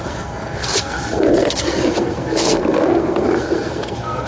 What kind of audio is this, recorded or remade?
remade